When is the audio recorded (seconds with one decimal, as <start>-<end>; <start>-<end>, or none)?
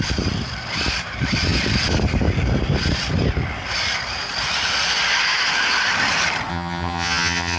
0.0-6.5